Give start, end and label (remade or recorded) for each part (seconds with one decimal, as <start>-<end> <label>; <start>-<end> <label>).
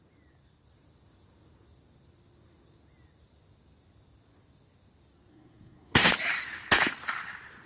0.0-5.3 recorded; 5.3-6.1 remade; 6.1-7.7 recorded